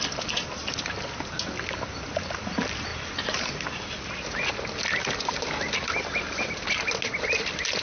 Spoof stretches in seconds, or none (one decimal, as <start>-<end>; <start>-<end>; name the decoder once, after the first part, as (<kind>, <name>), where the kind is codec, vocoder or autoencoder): none